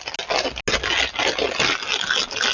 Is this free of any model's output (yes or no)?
yes